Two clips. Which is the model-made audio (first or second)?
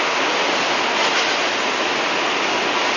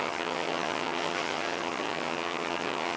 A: second